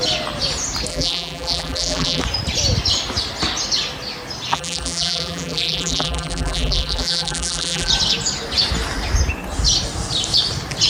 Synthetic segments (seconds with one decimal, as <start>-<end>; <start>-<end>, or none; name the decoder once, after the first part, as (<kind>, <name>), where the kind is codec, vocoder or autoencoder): 0.9-2.2 (vocoder, BigVGAN v2); 4.5-7.9